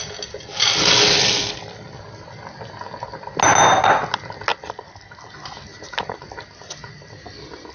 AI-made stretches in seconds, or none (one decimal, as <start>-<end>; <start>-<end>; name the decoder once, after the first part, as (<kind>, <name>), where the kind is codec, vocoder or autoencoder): none